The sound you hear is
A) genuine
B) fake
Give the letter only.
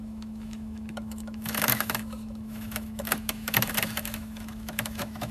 B